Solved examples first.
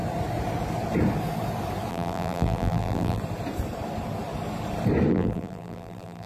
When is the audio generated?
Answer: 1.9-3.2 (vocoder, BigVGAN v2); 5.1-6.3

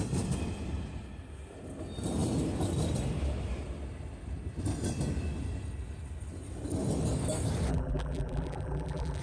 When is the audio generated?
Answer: 7.7-9.2 (vocoder, BigVGAN v2)

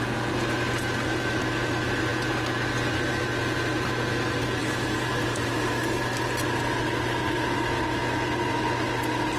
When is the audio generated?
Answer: 4.6-6.0 (vocoder, BigVGAN v2)

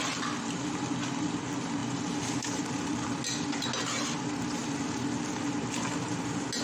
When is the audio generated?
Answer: none

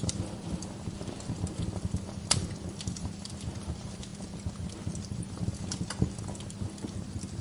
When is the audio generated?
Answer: 0.0-4.1 (vocoder, BigVGAN v2); 5.0-7.4

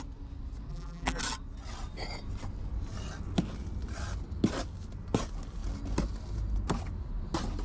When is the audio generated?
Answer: 0.7-1.2 (vocoder, BigVGAN v2)